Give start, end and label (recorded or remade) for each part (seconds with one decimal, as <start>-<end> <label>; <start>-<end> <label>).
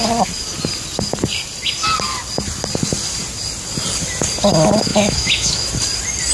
0.0-4.9 recorded; 4.9-5.7 remade; 5.7-6.3 recorded